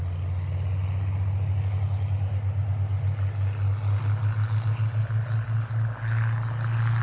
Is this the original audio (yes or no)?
yes